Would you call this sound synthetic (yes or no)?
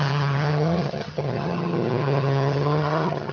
yes